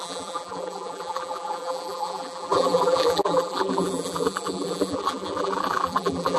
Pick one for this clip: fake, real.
fake